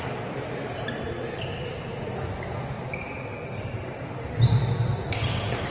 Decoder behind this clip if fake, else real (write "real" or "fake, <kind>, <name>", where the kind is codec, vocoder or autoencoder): real